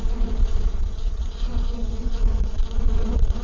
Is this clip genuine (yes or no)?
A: no